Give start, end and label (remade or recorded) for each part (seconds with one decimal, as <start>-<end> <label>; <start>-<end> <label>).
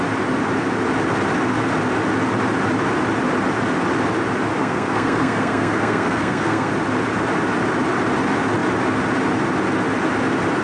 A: 0.0-4.6 recorded; 4.6-6.7 remade; 6.7-10.6 recorded